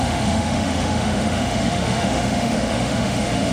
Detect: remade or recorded remade